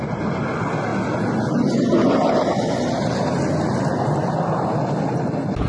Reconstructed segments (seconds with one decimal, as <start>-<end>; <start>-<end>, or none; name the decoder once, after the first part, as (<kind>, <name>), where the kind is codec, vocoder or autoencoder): none